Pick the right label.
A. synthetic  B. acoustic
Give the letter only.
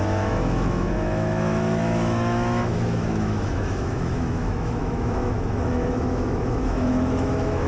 A